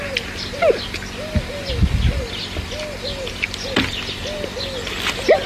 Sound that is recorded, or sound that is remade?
recorded